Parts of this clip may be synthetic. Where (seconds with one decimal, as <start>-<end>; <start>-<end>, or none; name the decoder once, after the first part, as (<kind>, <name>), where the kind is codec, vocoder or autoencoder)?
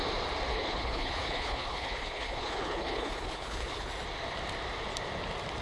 0.5-3.9 (codec, HILCodec)